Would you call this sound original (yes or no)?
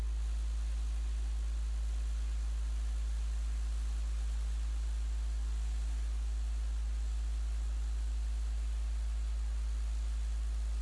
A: yes